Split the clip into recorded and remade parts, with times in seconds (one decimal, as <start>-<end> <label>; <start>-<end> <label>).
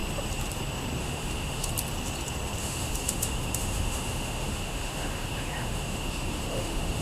0.0-1.0 recorded; 1.0-1.7 remade; 1.7-2.6 recorded; 2.6-7.0 remade